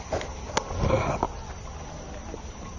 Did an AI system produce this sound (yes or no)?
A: no